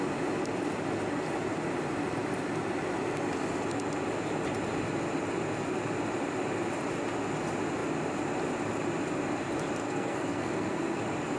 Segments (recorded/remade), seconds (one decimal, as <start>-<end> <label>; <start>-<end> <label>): 0.0-9.8 recorded; 9.8-11.0 remade; 11.0-11.4 recorded